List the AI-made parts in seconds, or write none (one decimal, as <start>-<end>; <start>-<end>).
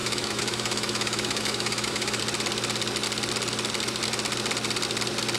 0.0-2.2